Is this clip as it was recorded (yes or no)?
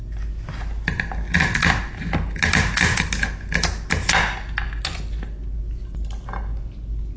yes